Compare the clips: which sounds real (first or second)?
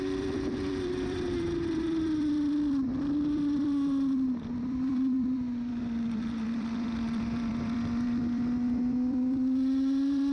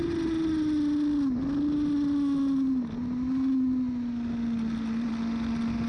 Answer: second